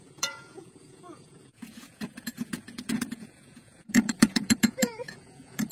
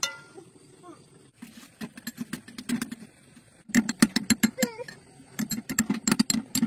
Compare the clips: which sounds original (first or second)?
second